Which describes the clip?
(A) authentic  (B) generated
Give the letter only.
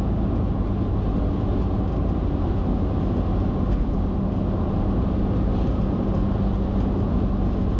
A